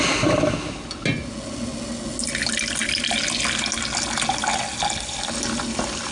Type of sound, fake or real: real